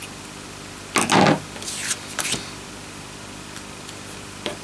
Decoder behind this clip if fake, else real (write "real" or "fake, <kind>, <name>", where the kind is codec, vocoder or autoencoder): real